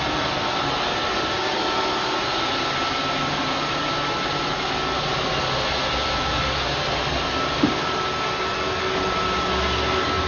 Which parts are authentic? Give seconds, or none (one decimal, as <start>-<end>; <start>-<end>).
0.0-10.3